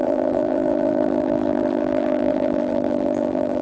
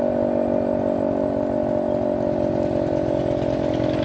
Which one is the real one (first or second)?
second